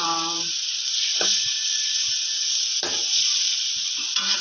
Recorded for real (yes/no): no